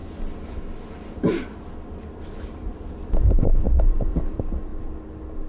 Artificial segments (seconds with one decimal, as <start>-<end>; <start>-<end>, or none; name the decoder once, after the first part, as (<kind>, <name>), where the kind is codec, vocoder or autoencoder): 3.3-4.7 (vocoder, BigVGAN v2)